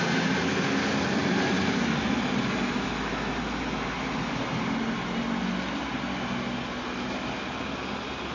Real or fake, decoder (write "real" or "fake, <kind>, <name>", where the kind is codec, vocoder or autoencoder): real